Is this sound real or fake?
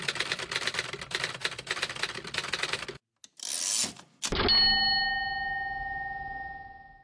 real